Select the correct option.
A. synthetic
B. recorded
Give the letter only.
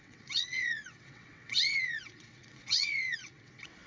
A